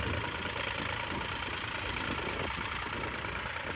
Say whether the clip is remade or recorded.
recorded